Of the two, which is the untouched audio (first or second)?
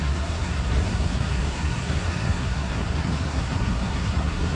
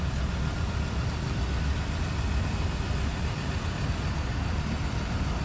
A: second